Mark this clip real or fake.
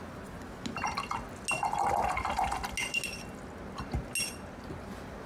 real